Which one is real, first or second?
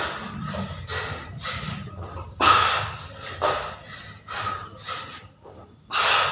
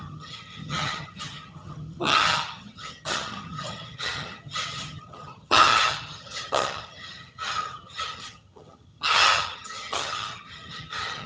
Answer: first